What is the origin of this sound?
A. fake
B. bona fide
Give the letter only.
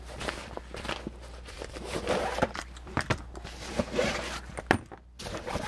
A